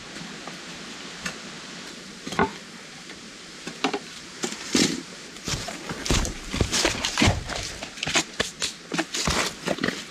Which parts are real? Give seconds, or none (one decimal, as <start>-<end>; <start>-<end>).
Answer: 0.0-2.5; 7.7-10.1